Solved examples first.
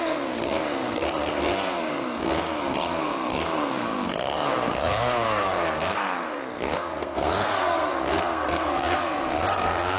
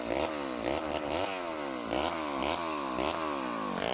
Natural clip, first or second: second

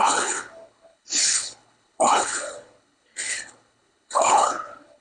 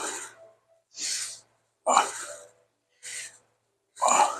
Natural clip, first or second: second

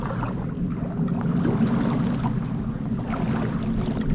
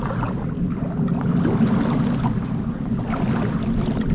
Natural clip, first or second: first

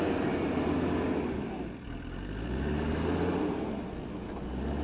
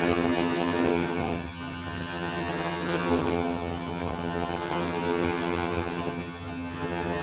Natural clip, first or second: first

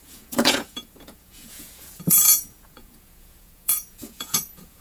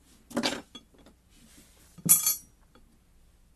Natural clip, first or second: second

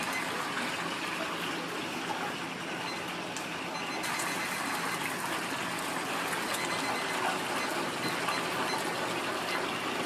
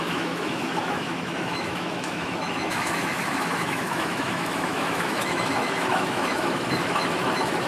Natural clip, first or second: first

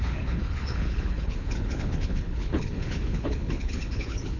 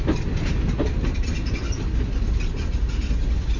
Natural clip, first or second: second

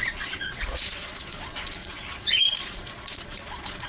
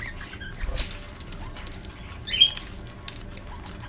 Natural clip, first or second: second